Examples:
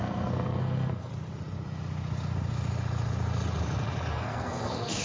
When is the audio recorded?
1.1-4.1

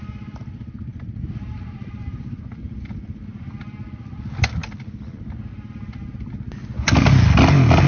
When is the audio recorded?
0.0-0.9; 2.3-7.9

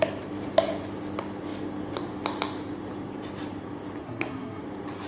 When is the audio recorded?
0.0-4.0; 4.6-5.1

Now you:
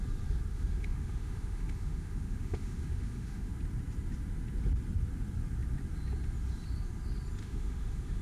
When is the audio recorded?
0.0-0.5; 3.5-7.4

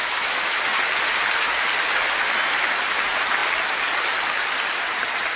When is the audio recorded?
0.6-5.4